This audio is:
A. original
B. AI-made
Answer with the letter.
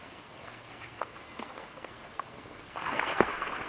B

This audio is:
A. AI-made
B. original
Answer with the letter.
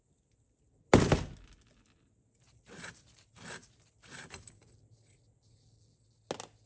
B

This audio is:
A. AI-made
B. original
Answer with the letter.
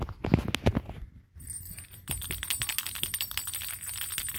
B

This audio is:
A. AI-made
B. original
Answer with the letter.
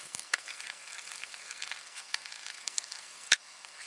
A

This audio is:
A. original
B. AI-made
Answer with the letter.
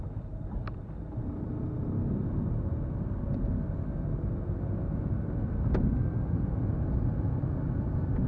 A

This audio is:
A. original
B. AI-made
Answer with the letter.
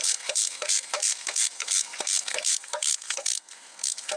B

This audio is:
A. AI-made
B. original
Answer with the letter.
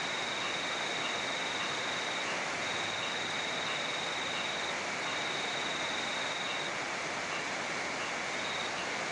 B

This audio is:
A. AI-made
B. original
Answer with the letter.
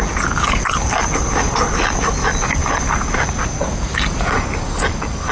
B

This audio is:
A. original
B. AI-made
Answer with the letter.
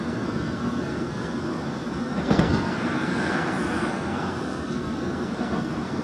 B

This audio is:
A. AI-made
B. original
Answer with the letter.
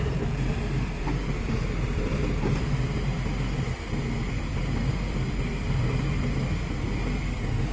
B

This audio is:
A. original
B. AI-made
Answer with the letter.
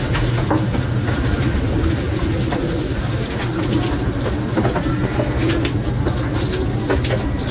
A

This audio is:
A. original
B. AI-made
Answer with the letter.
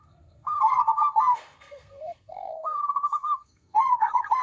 B